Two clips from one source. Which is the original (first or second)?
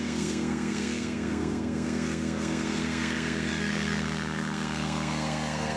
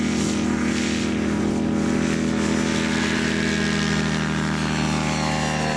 second